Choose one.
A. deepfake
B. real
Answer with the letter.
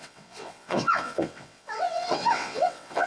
A